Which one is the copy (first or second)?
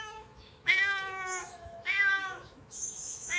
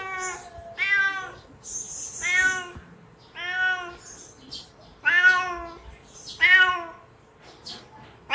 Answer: first